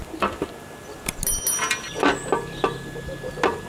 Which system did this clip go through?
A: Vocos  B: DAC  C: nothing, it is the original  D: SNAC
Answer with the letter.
C